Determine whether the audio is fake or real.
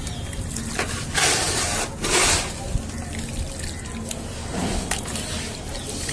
real